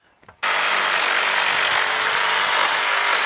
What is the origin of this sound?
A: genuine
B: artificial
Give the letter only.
A